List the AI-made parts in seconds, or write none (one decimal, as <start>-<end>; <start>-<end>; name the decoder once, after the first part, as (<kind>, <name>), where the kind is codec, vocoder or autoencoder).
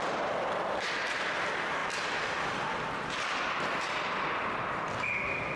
0.0-5.6 (vocoder, BigVGAN v2)